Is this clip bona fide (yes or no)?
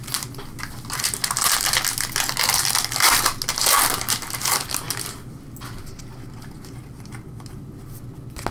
yes